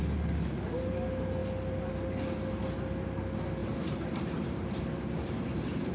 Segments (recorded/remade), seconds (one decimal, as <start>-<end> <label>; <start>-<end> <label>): 0.0-3.6 recorded; 3.6-4.8 remade; 4.8-5.9 recorded